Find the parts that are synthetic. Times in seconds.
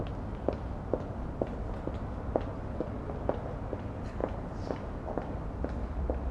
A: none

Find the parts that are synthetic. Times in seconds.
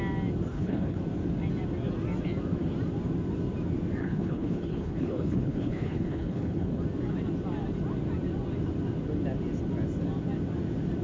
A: 0.5-1.0 (codec, HILCodec); 4.0-6.8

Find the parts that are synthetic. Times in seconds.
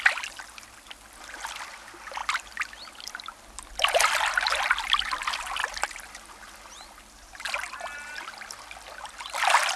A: none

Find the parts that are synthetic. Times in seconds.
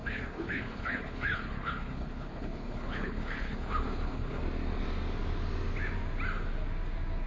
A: 0.0-4.4 (codec, HILCodec)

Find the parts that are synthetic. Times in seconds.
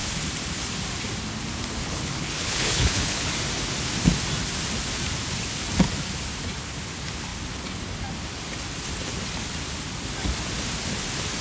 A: 1.8-3.3 (codec, HILCodec)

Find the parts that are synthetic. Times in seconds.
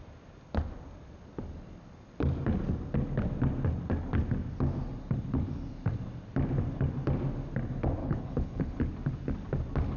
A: 8.0-8.8 (codec, HILCodec)